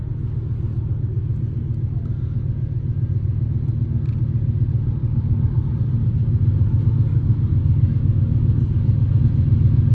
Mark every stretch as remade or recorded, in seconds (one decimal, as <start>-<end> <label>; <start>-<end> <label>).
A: 0.0-5.0 recorded; 5.0-5.7 remade; 5.7-7.1 recorded; 7.1-9.2 remade; 9.2-9.9 recorded